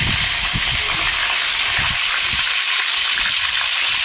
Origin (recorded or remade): recorded